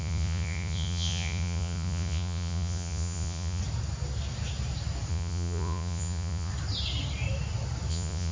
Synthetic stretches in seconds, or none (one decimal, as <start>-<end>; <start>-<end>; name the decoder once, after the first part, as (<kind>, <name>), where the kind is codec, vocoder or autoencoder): 0.0-3.6 (vocoder, Vocos); 5.1-6.5; 7.9-8.3